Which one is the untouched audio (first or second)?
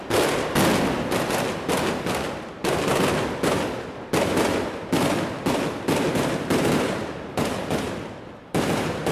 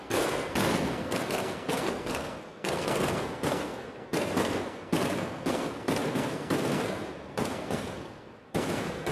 first